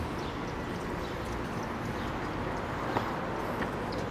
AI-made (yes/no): no